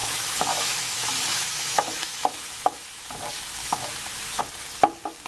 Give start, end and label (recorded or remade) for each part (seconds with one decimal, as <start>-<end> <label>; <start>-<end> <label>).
0.0-3.2 remade; 3.2-3.6 recorded; 3.6-4.4 remade; 4.4-5.3 recorded